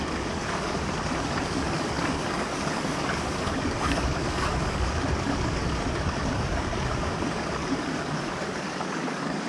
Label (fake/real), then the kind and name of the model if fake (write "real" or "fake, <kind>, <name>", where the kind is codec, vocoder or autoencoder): fake, codec, DAC